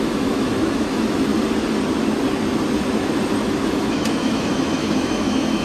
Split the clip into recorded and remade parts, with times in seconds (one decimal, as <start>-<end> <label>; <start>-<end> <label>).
0.0-1.3 remade; 1.3-3.4 recorded; 3.4-5.6 remade